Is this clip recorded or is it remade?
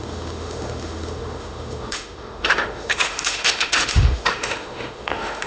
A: remade